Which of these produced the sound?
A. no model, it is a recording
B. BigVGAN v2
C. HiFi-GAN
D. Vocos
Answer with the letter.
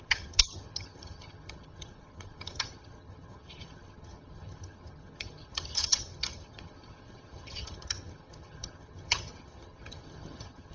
C